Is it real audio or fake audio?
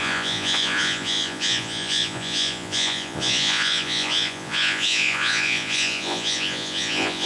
fake